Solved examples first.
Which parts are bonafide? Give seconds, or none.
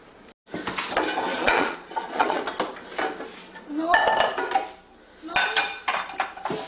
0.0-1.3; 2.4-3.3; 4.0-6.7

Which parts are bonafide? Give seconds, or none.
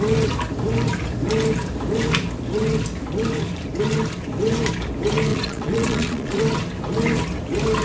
0.0-5.3; 6.4-7.8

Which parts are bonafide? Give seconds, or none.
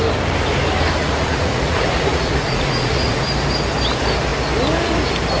0.0-1.0; 3.2-5.4